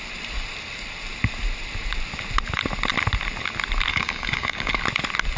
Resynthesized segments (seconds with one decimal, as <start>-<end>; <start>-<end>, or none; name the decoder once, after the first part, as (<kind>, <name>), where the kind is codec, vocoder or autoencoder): 3.9-4.8 (codec, DAC)